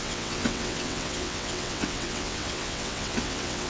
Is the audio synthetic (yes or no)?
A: yes